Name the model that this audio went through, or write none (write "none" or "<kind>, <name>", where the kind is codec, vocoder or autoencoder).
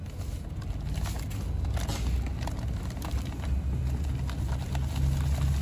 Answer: none